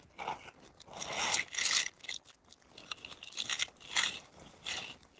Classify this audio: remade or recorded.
recorded